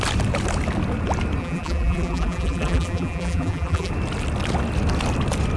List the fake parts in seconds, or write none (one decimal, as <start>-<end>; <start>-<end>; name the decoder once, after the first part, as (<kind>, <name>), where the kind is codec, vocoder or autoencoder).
1.4-3.9 (vocoder, BigVGAN v2)